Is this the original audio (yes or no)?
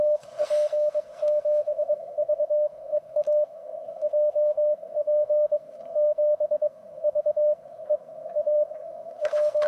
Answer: no